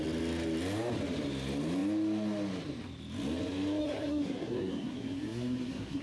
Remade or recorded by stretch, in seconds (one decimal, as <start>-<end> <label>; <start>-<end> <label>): 0.0-3.8 recorded; 3.8-6.0 remade